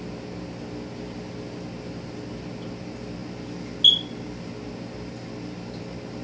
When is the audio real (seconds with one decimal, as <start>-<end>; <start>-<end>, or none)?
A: 0.0-6.2